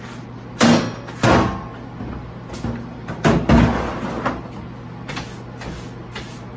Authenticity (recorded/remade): recorded